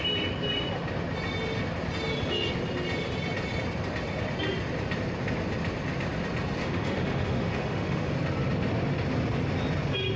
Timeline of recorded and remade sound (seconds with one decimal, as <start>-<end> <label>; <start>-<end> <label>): 0.0-6.6 recorded; 6.6-8.1 remade; 8.1-10.2 recorded